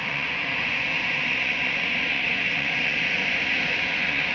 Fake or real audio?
fake